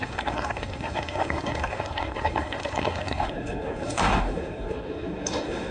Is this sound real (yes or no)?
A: no